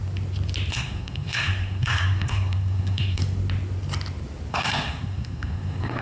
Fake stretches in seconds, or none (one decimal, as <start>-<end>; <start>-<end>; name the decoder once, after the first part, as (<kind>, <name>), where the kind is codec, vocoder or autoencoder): 0.7-3.2 (codec, SNAC); 4.5-6.0